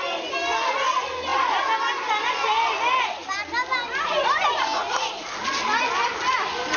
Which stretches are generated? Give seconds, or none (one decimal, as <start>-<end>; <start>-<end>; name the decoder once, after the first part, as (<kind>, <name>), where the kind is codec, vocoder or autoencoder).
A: none